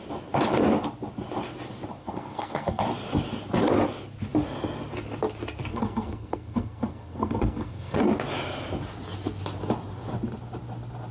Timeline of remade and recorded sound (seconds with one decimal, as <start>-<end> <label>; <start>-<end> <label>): 0.0-2.0 recorded; 2.0-2.8 remade; 2.8-5.7 recorded; 5.7-8.1 remade; 8.1-11.1 recorded